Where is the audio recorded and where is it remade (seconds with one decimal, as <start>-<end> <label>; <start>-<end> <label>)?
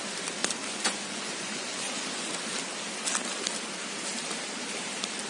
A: 0.0-0.6 recorded; 0.6-2.3 remade; 2.3-5.3 recorded